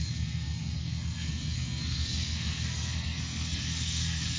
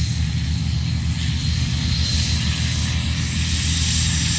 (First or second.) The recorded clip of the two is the second